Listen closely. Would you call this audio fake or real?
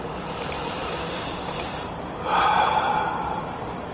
fake